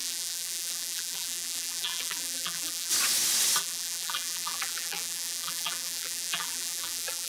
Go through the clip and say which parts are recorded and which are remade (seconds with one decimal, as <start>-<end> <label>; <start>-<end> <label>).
0.0-2.9 remade; 2.9-3.6 recorded; 3.6-7.3 remade